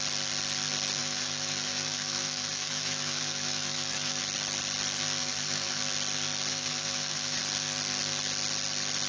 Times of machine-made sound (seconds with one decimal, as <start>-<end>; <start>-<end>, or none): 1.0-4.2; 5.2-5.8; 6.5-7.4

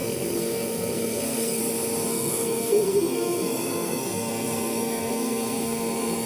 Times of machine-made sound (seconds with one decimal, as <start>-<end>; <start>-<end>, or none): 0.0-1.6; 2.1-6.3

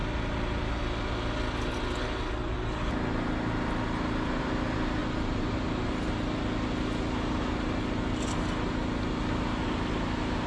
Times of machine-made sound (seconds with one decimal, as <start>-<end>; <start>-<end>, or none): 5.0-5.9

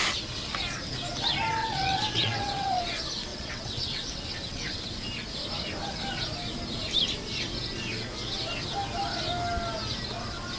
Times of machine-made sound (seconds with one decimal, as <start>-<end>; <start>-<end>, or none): 1.6-2.8; 3.3-4.8